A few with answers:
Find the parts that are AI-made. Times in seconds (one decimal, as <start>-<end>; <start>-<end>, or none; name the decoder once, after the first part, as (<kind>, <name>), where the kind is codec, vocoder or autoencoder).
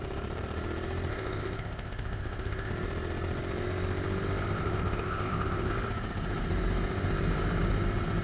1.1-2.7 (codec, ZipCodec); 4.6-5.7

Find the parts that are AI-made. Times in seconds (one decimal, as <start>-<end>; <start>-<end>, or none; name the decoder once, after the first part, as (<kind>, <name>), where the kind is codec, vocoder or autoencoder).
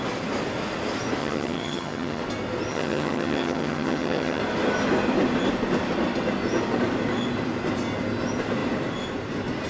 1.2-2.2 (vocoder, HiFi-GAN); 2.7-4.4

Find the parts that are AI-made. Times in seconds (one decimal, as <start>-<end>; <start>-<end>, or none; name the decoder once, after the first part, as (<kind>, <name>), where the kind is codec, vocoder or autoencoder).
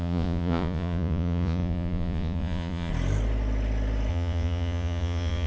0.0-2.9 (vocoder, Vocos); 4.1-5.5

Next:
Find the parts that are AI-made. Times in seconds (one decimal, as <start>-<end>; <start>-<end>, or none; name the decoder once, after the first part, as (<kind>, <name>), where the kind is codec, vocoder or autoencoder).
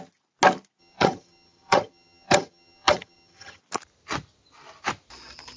0.8-3.6 (vocoder, HiFi-GAN)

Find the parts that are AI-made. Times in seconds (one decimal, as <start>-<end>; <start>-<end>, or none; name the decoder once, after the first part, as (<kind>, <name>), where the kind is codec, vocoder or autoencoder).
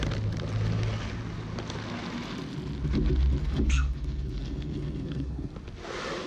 3.4-5.5 (codec, SNAC)